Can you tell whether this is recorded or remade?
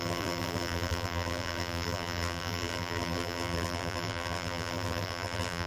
remade